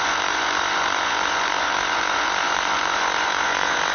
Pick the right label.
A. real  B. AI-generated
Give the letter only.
B